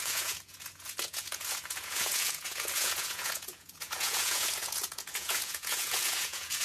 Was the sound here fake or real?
fake